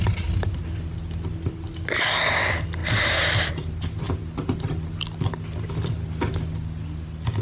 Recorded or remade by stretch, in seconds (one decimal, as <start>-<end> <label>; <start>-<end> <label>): 0.0-7.4 recorded